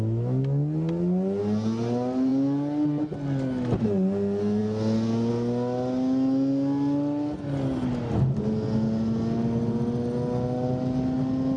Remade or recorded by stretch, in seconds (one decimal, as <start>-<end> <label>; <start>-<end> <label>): 0.0-11.6 recorded